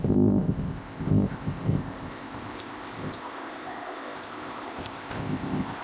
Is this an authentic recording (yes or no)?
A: no